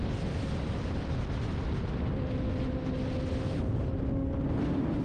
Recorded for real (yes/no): yes